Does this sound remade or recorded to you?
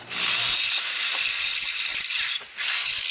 recorded